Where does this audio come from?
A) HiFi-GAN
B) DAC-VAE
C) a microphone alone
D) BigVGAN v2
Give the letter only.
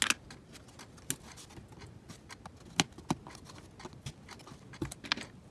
C